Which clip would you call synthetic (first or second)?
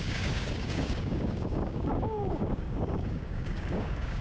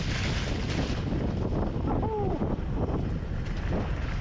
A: first